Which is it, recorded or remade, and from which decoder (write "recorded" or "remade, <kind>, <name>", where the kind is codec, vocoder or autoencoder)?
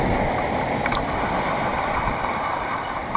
remade, vocoder, BigVGAN v2